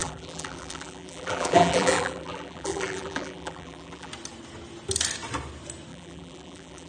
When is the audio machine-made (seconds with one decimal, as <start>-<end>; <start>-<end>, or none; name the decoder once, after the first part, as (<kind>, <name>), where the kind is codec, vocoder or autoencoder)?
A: 0.0-4.1 (vocoder, BigVGAN v2); 5.9-6.9